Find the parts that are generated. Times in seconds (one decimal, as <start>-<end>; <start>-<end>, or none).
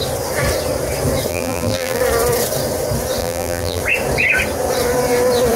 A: 1.3-2.0; 3.2-3.8